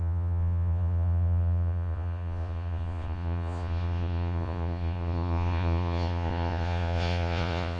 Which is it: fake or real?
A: fake